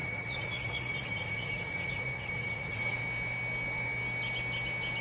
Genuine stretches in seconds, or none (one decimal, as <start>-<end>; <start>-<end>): 3.0-5.0